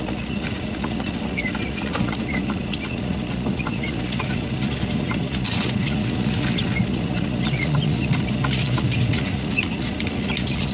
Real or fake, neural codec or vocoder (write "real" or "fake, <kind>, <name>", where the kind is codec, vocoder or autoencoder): fake, vocoder, Vocos